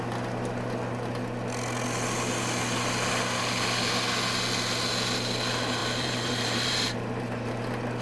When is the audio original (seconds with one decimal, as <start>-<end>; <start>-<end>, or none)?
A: 0.0-5.8; 7.6-8.0